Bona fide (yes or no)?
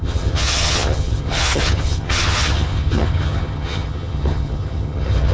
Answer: no